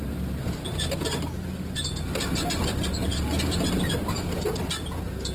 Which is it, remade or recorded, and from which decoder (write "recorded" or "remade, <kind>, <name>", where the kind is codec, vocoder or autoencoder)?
recorded